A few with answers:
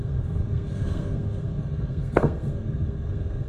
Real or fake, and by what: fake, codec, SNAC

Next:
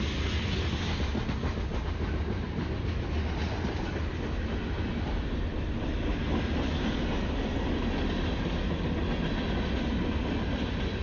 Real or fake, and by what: real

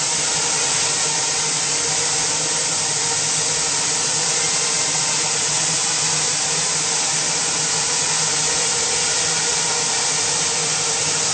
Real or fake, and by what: real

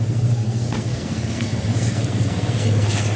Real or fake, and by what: fake, codec, SNAC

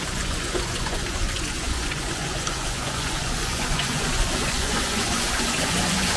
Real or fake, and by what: fake, vocoder, Vocos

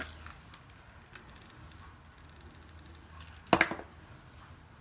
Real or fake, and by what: real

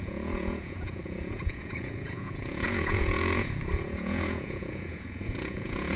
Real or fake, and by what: fake, vocoder, Vocos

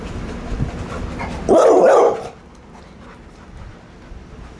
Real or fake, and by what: real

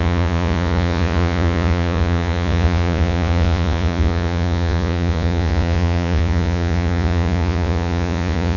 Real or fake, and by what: fake, vocoder, Vocos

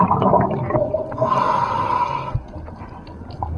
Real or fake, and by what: real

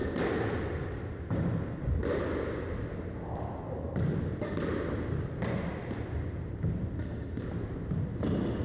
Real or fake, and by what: real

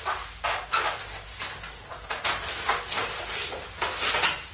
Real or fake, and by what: real